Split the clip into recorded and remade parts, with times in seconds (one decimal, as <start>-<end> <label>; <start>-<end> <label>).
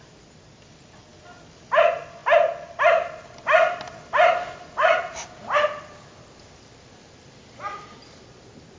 0.0-8.8 recorded